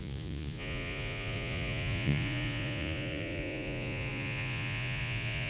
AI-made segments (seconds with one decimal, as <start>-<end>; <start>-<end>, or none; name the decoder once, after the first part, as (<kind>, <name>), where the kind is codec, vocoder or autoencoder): 0.0-5.5 (vocoder, Vocos)